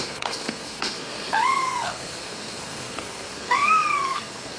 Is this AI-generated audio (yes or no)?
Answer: yes